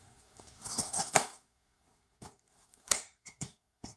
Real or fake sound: fake